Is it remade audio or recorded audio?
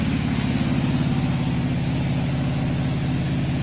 recorded